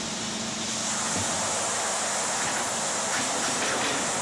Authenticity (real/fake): real